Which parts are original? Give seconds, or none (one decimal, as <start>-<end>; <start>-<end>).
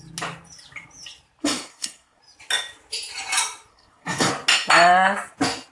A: 0.0-1.4; 2.2-3.7; 4.3-5.7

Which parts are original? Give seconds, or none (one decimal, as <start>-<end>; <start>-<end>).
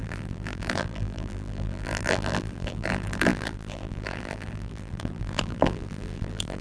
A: none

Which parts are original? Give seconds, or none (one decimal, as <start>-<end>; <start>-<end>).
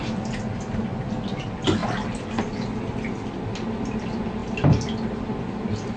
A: 0.0-4.4; 5.4-6.0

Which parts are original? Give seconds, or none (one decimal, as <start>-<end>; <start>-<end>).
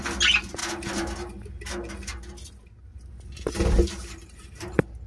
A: 0.0-2.9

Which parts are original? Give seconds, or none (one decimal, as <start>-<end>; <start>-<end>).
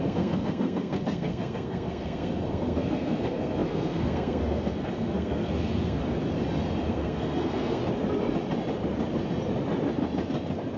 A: 6.0-6.9; 7.8-10.8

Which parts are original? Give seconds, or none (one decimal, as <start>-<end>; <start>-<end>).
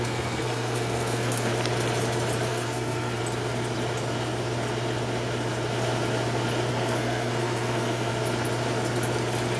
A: 1.5-2.5; 3.2-6.7; 8.1-9.6